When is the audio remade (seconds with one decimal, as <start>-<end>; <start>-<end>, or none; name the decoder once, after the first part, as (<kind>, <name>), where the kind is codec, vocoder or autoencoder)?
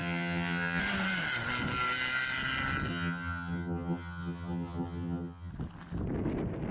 0.0-0.8 (vocoder, HiFi-GAN); 2.9-5.5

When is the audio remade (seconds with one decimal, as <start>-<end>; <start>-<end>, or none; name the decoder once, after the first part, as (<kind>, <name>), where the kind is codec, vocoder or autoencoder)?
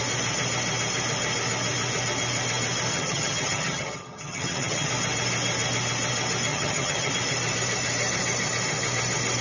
2.9-4.9 (vocoder, HiFi-GAN); 6.5-7.1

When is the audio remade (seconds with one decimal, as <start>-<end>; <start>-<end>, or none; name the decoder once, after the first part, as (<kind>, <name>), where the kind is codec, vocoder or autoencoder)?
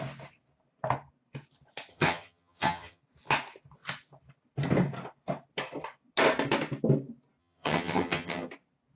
1.9-3.0 (vocoder, HiFi-GAN); 7.4-8.5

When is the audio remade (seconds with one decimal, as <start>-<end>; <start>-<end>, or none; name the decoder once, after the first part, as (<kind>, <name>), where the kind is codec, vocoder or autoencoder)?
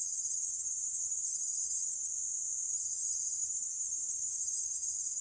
0.0-2.1 (vocoder, HiFi-GAN); 2.7-5.2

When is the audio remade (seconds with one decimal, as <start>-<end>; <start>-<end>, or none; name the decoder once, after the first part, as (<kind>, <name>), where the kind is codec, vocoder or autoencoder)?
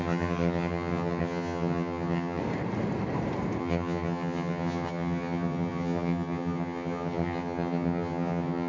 0.0-2.4 (vocoder, HiFi-GAN); 3.6-8.7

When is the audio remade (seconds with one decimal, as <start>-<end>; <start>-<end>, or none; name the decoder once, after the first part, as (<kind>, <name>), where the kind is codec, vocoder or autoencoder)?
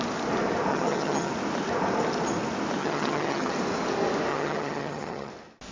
0.7-1.3 (vocoder, HiFi-GAN); 2.8-3.5; 4.3-5.3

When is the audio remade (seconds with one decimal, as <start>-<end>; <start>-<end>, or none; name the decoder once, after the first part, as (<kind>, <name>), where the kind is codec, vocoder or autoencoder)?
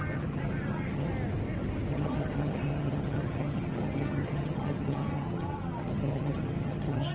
0.0-1.1 (vocoder, HiFi-GAN); 1.9-7.1